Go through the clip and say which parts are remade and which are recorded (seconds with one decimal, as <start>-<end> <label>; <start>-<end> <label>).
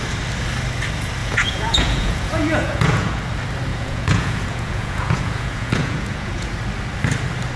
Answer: 0.0-1.2 recorded; 1.2-3.2 remade; 3.2-3.7 recorded; 3.7-6.5 remade; 6.5-7.6 recorded